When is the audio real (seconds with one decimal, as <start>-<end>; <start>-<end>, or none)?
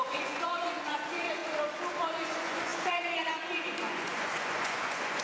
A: 1.4-2.1